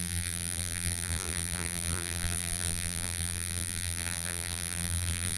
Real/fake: fake